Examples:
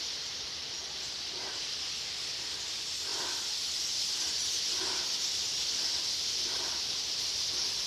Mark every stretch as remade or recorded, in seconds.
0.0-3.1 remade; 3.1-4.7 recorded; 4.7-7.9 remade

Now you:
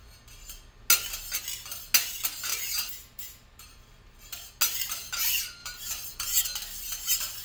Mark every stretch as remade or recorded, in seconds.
0.0-2.5 recorded; 2.5-4.6 remade; 4.6-5.6 recorded; 5.6-6.4 remade; 6.4-7.4 recorded